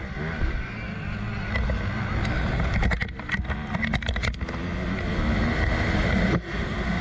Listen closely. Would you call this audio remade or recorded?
recorded